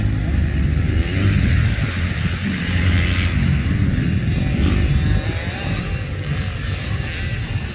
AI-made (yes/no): no